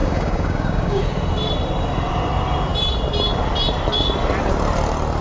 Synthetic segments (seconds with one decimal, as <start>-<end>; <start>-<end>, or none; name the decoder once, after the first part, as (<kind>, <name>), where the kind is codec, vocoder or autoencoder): 0.0-1.0 (codec, DAC)